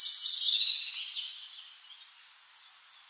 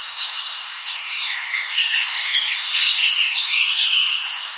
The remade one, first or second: second